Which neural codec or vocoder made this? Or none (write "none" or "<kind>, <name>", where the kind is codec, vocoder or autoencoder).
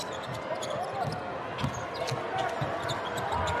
none